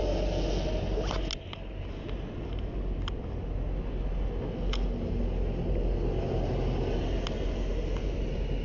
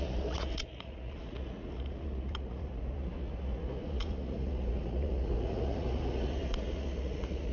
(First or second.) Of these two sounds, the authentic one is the first